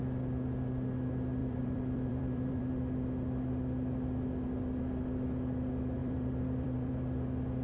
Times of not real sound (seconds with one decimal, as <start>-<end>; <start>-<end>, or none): 1.4-2.7; 6.0-6.9